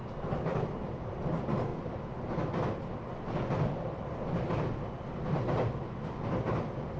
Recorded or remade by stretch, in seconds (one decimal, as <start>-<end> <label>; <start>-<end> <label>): 0.0-7.0 recorded